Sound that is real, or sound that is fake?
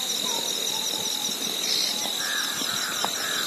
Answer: real